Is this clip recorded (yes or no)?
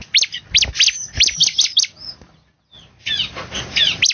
yes